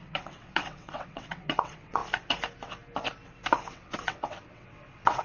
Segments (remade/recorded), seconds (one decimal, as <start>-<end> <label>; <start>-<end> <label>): 0.0-2.0 remade; 2.0-3.7 recorded; 3.7-5.2 remade